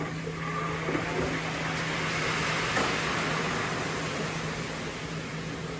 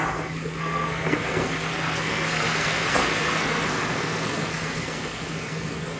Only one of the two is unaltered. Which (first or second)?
first